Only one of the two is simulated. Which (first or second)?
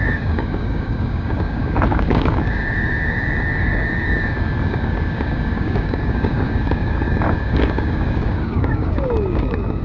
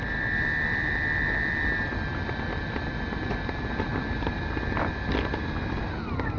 first